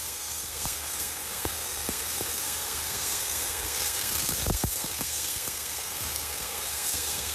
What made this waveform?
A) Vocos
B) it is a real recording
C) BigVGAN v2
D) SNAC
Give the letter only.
D